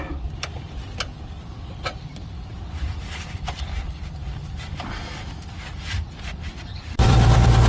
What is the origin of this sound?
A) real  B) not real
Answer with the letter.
B